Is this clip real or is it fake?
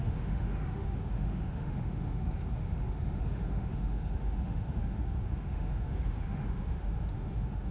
fake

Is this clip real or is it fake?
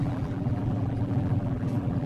fake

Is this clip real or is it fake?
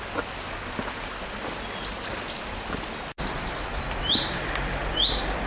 real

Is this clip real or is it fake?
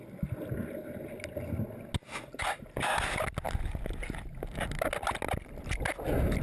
real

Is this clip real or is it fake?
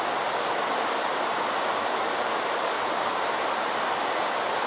real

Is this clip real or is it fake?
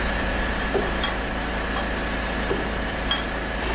real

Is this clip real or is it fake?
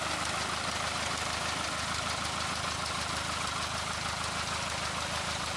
real